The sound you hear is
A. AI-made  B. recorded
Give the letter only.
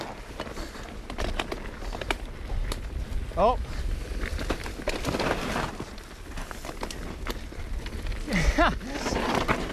B